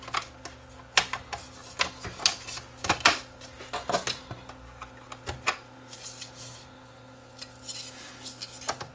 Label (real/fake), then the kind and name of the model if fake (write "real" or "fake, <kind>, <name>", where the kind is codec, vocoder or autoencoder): real